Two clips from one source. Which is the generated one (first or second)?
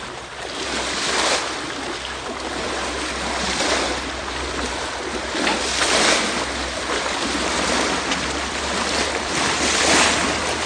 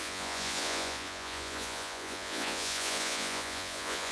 second